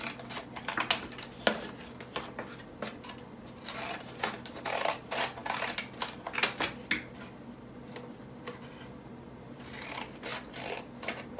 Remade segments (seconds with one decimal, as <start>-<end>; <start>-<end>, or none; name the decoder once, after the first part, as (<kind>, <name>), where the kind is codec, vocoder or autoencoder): none